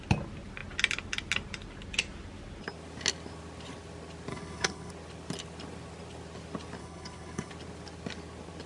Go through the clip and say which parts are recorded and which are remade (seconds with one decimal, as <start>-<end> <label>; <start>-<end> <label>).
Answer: 0.0-4.3 recorded; 4.3-4.9 remade; 4.9-6.8 recorded; 6.8-7.5 remade; 7.5-8.7 recorded